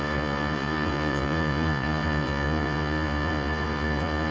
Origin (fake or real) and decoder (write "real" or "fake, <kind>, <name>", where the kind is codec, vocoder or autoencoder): fake, vocoder, Vocos